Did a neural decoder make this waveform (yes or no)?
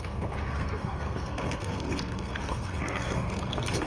yes